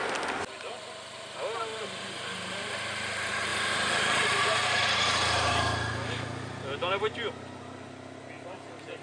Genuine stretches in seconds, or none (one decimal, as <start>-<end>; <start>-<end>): 0.0-3.5; 4.8-9.0